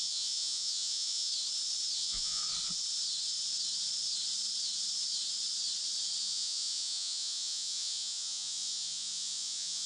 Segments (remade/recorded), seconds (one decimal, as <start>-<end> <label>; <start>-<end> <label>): 0.0-1.3 remade; 1.3-2.0 recorded; 2.0-2.4 remade; 2.4-6.2 recorded; 6.2-9.9 remade